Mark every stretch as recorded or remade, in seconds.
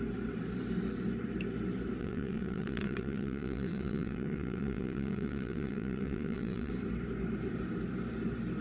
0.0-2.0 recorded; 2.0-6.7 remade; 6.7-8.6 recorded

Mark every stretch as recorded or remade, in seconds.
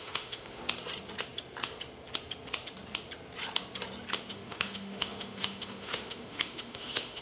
0.0-0.6 remade; 0.6-4.3 recorded; 4.3-7.2 remade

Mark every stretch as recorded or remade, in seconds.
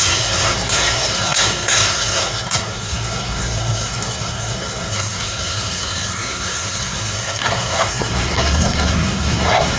0.0-9.8 remade